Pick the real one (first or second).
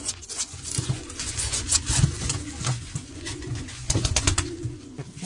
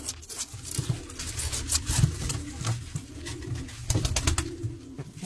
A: second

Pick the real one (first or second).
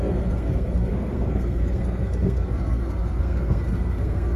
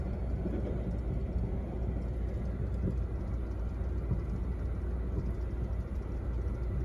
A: second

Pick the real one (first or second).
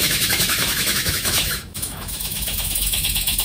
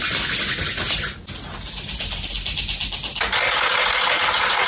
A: second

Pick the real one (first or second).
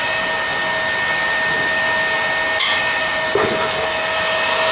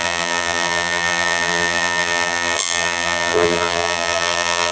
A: first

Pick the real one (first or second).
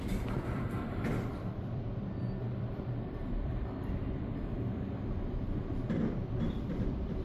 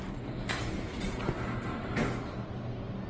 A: second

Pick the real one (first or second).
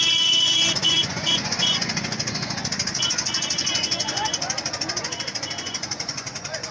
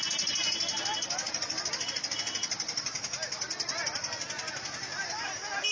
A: second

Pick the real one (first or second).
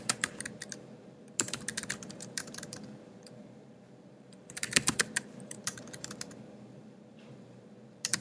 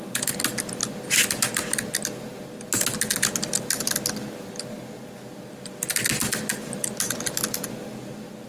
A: second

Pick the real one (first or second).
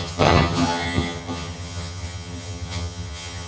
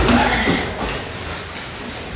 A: second